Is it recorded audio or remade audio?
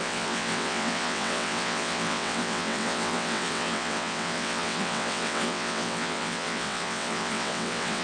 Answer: remade